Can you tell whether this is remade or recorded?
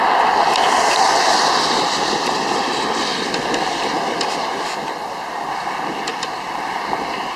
recorded